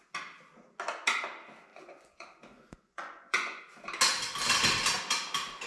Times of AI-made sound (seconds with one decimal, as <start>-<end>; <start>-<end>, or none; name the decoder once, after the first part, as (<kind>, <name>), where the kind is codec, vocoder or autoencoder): 1.7-3.6 (vocoder, Vocos)